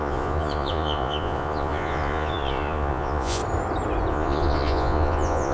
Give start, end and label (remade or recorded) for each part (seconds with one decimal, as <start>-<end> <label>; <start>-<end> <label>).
0.0-3.4 remade; 3.4-4.1 recorded; 4.1-5.5 remade